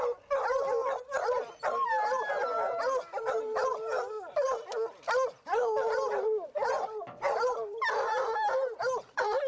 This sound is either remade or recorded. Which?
recorded